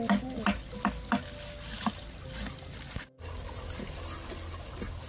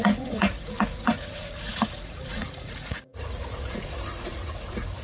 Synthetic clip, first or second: second